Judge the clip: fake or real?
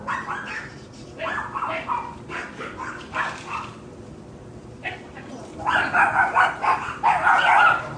real